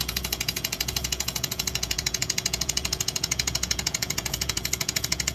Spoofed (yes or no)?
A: yes